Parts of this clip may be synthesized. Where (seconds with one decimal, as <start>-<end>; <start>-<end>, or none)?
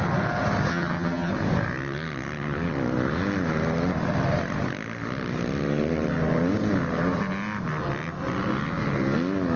0.7-1.3